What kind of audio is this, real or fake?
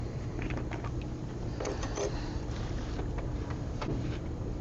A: fake